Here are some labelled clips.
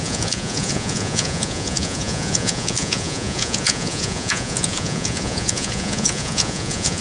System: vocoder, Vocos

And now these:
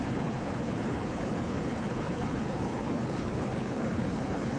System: codec, HILCodec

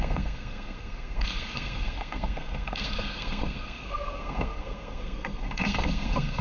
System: codec, SNAC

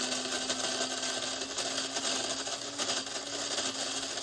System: none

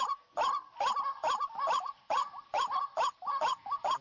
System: none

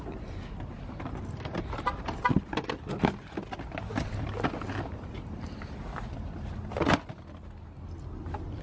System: none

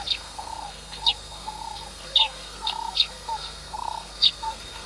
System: codec, SNAC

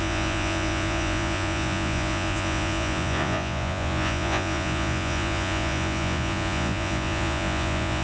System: vocoder, Vocos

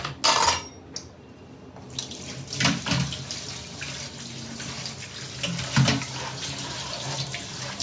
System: none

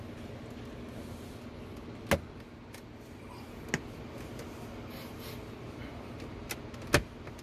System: none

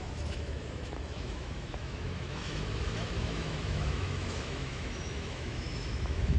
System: autoencoder, DAC-VAE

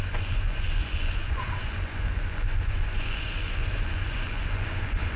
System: vocoder, Vocos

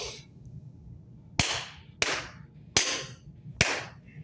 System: none